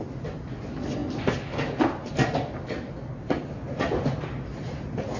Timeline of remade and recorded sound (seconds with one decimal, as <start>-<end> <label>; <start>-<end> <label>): 0.0-5.2 recorded